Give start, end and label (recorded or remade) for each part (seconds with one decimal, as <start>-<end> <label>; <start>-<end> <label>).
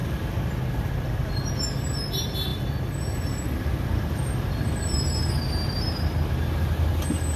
0.0-7.4 recorded